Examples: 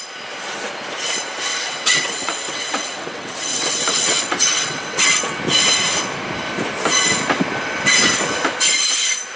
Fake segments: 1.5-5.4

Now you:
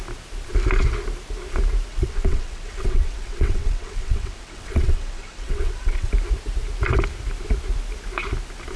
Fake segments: 1.9-6.1

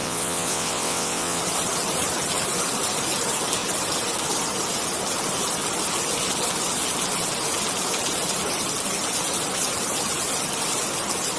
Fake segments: 0.0-1.4

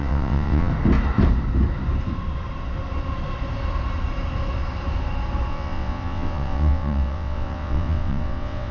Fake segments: 0.0-0.7; 5.5-8.7

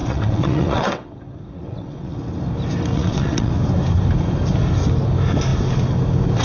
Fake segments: 0.0-2.2; 2.9-3.5